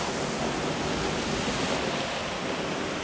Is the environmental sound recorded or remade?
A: recorded